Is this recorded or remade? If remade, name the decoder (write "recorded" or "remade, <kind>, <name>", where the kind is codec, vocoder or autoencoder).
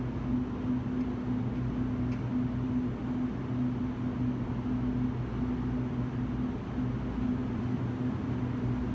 recorded